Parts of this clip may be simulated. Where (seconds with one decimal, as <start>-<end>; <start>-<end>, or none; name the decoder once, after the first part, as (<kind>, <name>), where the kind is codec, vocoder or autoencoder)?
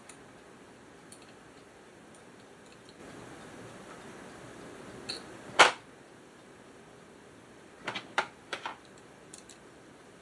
0.0-3.0 (vocoder, BigVGAN v2); 5.6-10.2